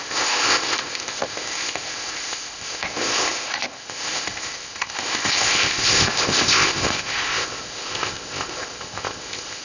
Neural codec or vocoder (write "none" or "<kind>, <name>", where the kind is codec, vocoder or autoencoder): codec, ZipCodec